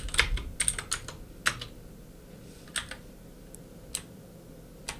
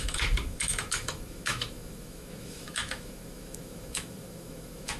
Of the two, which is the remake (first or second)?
second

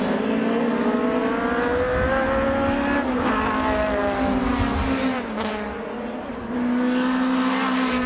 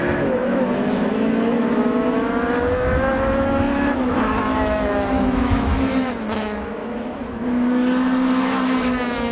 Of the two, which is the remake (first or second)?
second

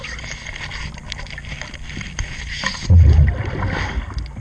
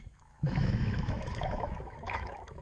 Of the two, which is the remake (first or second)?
second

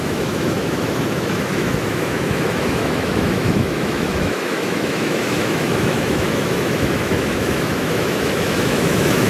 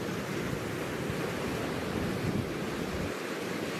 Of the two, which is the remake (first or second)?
first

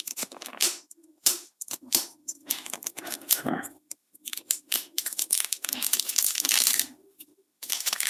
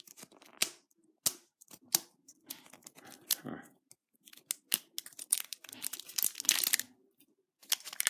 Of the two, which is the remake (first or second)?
first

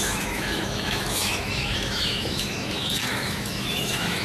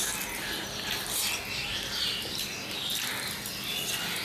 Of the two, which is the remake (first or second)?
first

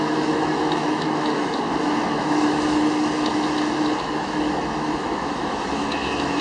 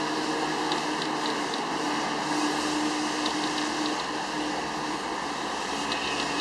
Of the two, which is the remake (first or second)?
first